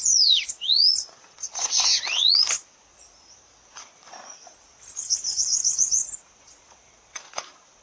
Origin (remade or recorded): remade